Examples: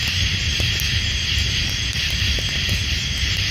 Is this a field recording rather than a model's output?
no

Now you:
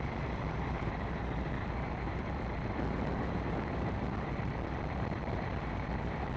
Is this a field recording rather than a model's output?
no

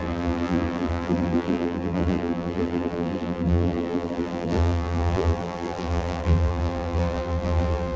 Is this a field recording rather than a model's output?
no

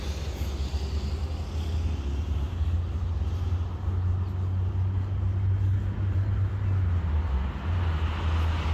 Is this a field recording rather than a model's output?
yes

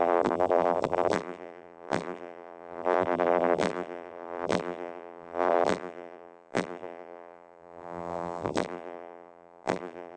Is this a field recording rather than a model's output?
no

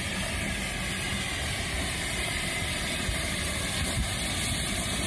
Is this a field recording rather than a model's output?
no